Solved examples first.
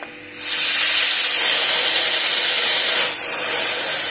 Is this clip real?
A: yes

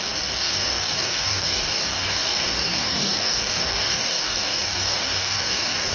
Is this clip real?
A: no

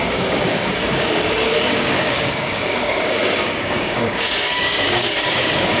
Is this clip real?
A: no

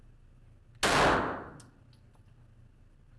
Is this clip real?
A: yes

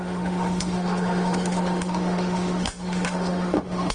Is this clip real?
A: no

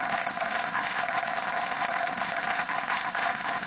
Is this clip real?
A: no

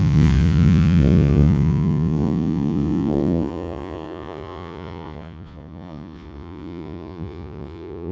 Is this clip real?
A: no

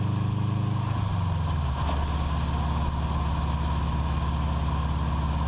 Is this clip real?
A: yes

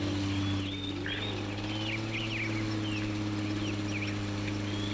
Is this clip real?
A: yes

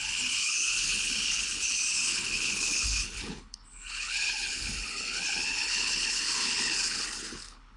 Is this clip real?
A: no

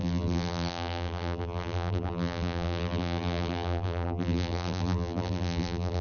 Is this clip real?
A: no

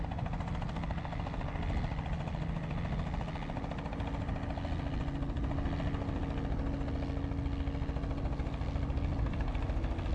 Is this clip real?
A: yes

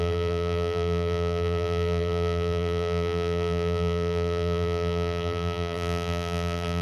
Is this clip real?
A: no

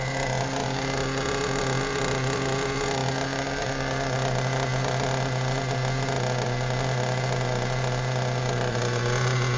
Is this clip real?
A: yes